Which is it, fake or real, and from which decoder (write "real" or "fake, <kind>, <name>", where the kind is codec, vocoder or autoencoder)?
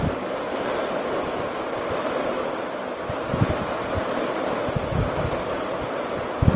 real